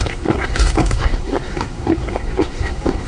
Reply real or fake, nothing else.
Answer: fake